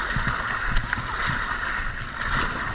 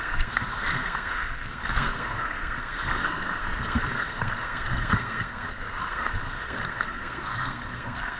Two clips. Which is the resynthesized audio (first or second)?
second